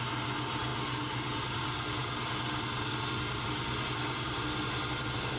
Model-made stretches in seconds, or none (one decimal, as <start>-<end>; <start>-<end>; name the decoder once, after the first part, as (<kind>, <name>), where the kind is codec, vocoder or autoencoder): none